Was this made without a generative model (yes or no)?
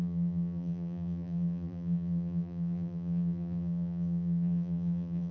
no